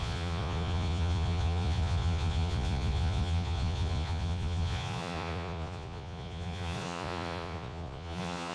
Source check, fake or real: fake